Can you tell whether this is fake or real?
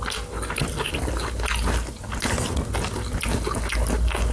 real